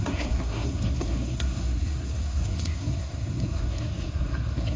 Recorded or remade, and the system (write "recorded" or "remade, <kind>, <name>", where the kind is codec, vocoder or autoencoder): remade, codec, SNAC